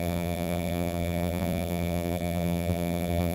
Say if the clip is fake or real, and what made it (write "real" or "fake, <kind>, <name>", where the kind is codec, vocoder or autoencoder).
fake, vocoder, BigVGAN v2